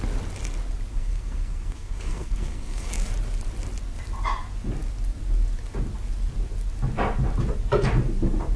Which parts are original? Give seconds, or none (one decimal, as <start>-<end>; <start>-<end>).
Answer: 0.0-0.9; 3.1-8.6